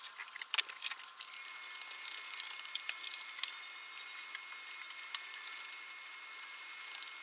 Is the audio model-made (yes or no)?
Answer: no